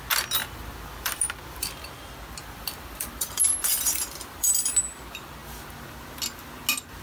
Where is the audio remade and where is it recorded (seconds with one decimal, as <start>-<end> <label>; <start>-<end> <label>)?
0.0-0.4 recorded; 0.4-1.7 remade; 1.7-2.4 recorded; 2.4-4.5 remade; 4.5-7.0 recorded